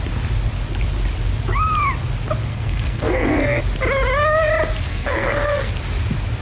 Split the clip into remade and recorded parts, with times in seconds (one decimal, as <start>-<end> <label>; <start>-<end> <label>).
0.0-2.5 recorded; 2.5-3.6 remade; 3.6-4.9 recorded; 4.9-5.7 remade; 5.7-6.4 recorded